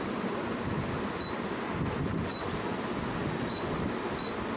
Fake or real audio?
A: real